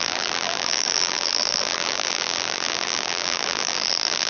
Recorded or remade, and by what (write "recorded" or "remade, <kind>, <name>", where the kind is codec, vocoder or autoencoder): remade, vocoder, BigVGAN v2